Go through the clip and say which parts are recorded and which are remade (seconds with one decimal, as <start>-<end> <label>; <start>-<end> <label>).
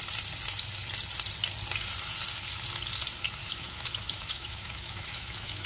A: 0.0-3.4 recorded; 3.4-5.7 remade